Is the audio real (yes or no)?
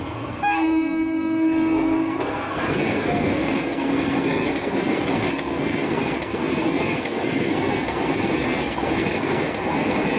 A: no